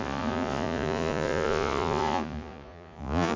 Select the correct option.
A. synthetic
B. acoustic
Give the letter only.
A